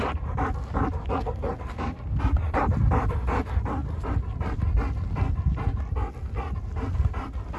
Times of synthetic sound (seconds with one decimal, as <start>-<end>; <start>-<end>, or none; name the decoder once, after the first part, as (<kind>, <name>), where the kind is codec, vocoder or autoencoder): none